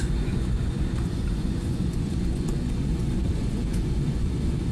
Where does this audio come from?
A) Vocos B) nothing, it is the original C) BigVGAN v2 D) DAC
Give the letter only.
A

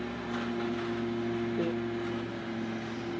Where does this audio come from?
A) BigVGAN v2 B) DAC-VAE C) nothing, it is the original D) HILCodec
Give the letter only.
C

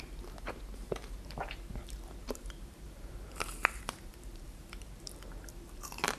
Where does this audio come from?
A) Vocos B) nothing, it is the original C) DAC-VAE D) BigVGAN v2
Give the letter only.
D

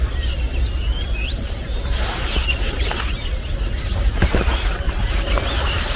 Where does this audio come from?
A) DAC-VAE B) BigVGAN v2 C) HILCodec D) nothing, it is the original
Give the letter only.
D